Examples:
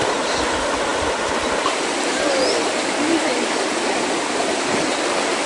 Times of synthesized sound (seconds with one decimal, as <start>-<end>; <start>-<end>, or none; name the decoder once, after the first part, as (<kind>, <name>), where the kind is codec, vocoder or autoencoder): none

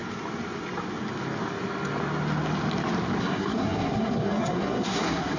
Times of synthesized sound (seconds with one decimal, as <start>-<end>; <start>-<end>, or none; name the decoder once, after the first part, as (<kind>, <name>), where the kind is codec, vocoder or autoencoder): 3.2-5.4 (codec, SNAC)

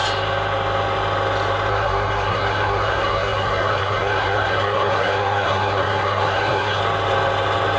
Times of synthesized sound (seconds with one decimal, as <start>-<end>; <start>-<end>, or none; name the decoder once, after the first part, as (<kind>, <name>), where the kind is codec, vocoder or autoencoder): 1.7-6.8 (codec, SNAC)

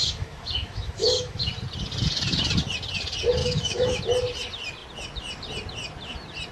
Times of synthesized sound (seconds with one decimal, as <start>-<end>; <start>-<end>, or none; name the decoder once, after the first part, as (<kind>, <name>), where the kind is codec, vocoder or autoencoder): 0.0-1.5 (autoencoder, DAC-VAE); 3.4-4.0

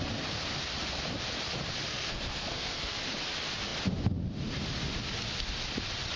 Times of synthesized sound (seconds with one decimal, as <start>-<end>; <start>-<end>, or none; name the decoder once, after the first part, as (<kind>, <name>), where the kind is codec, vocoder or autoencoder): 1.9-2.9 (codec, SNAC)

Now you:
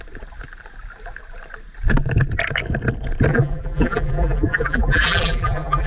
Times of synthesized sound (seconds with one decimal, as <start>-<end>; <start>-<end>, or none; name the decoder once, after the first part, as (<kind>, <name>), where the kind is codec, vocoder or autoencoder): 3.3-5.9 (vocoder, BigVGAN v2)

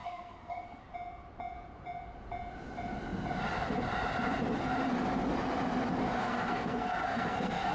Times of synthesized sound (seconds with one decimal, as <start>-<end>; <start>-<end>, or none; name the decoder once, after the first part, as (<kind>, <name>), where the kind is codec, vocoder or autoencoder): 0.0-0.8 (codec, SNAC); 6.2-7.7

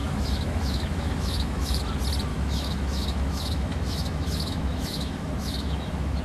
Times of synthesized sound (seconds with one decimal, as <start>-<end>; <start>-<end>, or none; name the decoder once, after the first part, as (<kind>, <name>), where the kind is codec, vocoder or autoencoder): 0.0-1.8 (autoencoder, DAC-VAE); 2.3-6.2